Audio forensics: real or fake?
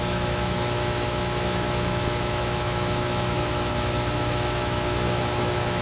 fake